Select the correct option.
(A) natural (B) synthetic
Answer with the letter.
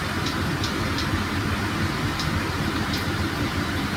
B